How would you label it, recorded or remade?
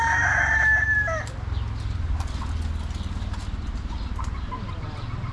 recorded